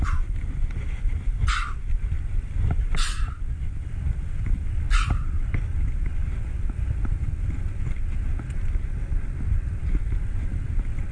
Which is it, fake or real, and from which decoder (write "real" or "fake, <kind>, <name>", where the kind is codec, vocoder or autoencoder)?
real